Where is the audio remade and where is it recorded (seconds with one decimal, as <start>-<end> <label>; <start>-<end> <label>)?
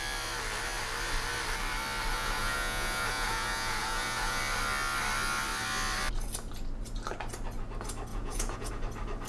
0.0-2.1 recorded; 2.1-4.4 remade; 4.4-8.1 recorded; 8.1-8.7 remade; 8.7-9.3 recorded